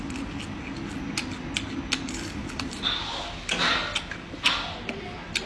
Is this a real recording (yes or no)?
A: yes